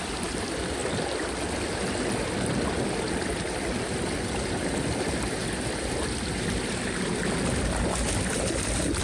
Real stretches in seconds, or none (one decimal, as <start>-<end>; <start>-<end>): 0.0-9.0